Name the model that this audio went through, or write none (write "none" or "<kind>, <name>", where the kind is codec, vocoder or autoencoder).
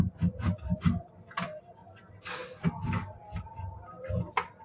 none